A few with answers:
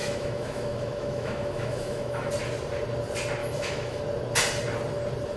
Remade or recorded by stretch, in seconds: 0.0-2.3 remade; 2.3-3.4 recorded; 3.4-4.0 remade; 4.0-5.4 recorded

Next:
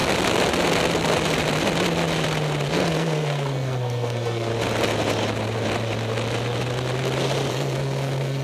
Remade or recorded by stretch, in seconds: 0.0-2.7 recorded; 2.7-4.5 remade; 4.5-7.5 recorded; 7.5-8.4 remade

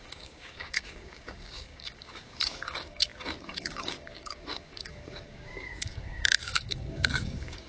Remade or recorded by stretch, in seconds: 0.0-7.7 remade

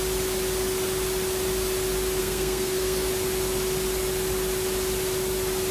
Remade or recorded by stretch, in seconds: 0.0-2.2 recorded; 2.2-3.1 remade; 3.1-5.7 recorded

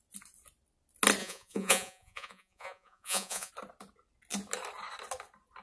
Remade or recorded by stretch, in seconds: 0.0-1.2 recorded; 1.2-3.5 remade; 3.5-5.6 recorded